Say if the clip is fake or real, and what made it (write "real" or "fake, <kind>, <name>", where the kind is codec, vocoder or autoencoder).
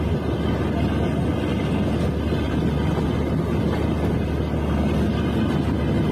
real